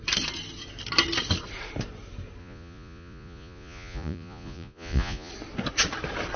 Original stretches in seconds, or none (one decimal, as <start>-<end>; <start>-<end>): 0.0-2.4; 5.3-6.4